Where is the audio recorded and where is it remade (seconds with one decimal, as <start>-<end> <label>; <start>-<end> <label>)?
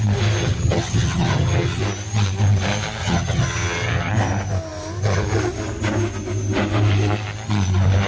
0.0-0.4 recorded; 0.4-1.8 remade; 1.8-3.0 recorded; 3.0-4.1 remade; 4.1-8.1 recorded